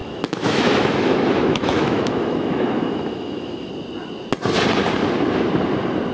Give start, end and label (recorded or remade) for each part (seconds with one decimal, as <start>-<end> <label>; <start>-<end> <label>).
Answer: 0.0-3.7 remade; 3.7-6.1 recorded

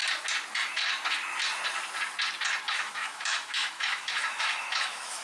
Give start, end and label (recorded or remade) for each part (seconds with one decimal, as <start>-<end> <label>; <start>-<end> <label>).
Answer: 0.0-2.7 recorded; 2.7-5.2 remade

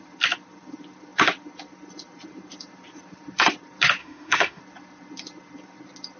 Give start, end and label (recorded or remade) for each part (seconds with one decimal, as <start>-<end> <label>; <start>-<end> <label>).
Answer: 0.0-4.0 recorded; 4.0-4.6 remade; 4.6-6.2 recorded